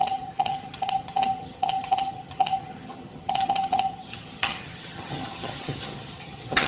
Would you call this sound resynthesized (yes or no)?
yes